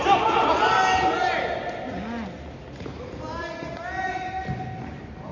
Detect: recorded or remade recorded